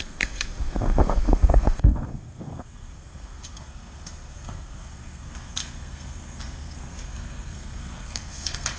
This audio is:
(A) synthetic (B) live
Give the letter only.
A